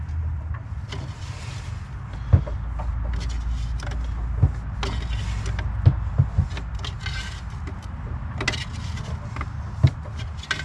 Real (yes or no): yes